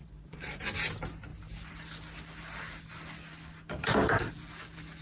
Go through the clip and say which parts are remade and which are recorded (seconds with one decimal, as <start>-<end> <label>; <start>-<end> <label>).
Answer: 0.0-0.6 remade; 0.6-5.0 recorded